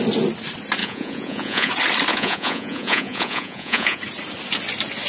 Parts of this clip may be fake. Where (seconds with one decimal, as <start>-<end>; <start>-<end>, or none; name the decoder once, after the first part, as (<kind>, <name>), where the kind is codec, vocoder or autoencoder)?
0.8-1.7 (vocoder, Vocos); 2.1-4.0